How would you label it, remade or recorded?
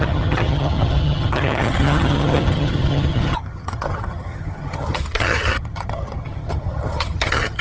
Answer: remade